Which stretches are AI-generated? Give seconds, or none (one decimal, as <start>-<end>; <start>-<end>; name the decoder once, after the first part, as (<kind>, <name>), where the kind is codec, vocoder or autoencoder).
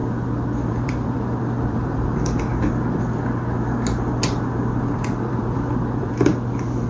0.7-2.5 (vocoder, BigVGAN v2); 4.8-6.3